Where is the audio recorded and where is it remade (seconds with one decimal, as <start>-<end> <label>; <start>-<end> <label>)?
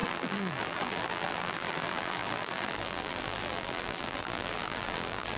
0.0-5.4 remade